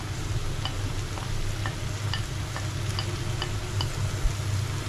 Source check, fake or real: real